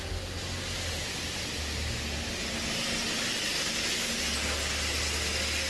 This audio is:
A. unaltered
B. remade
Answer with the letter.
A